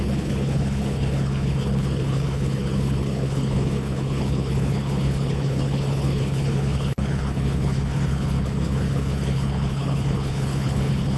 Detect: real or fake fake